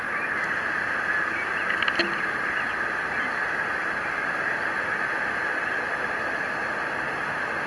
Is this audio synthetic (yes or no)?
no